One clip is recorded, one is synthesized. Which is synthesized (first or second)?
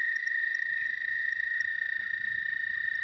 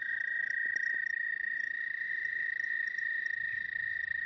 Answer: first